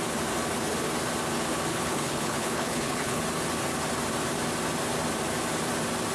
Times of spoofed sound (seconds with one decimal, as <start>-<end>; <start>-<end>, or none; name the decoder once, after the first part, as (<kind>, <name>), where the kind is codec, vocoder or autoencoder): 1.7-3.2 (codec, HILCodec)